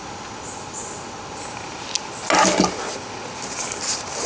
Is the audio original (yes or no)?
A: yes